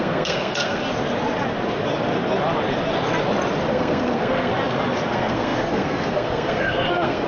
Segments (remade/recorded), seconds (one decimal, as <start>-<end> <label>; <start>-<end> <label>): 0.0-0.8 remade; 0.8-3.7 recorded; 3.7-4.5 remade; 4.5-5.1 recorded; 5.1-7.3 remade